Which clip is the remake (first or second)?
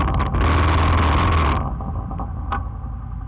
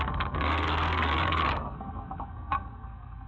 second